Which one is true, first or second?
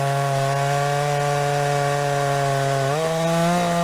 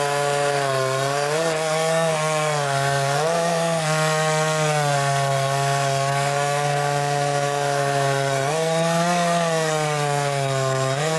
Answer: first